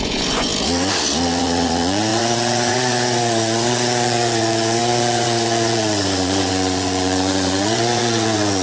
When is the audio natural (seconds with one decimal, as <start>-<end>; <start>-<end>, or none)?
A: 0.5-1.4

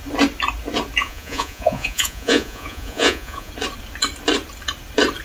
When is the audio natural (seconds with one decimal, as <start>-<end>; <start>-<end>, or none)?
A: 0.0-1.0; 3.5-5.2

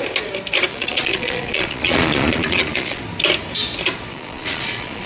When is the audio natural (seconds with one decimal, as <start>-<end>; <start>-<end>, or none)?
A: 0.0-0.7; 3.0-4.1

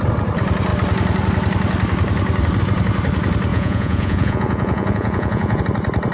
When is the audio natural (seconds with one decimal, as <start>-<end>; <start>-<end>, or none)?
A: 0.0-3.5; 5.6-6.1

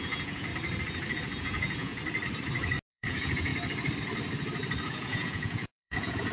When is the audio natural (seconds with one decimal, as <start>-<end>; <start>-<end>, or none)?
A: 0.5-1.4; 1.9-2.9; 3.5-4.8